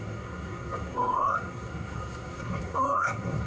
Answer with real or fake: fake